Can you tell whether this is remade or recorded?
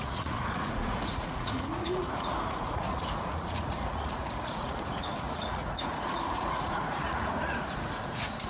remade